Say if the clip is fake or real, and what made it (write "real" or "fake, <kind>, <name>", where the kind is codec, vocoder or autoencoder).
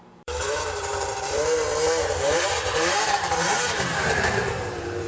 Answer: fake, vocoder, BigVGAN v2